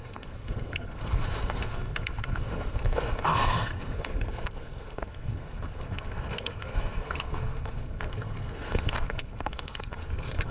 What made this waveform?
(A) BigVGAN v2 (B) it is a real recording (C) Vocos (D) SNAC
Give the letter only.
D